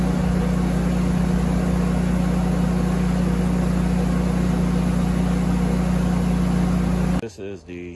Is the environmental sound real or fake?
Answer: real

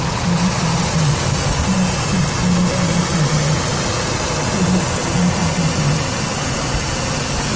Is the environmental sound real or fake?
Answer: real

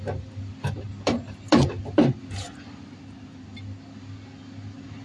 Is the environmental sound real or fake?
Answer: real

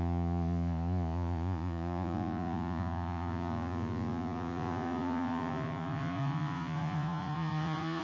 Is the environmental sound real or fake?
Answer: fake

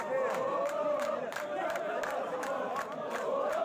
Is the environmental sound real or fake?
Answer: fake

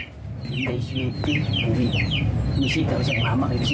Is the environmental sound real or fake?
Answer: fake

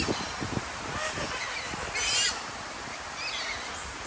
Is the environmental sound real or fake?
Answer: real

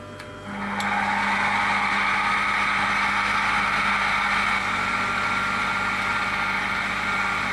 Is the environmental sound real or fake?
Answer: real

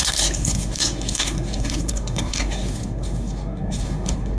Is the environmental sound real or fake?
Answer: fake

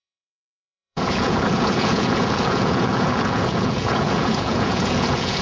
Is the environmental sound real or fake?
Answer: fake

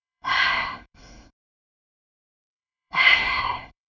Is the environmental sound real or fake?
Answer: fake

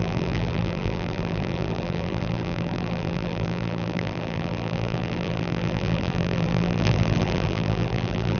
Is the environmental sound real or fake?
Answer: fake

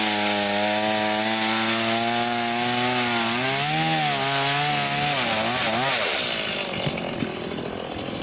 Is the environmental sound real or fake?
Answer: real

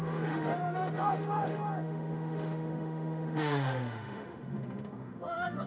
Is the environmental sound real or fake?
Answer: fake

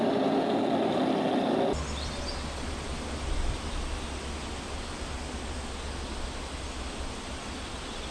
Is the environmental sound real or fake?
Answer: real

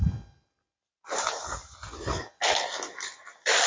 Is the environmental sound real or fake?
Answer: real